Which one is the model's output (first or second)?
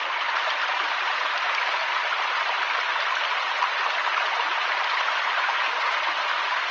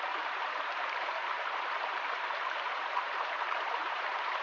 second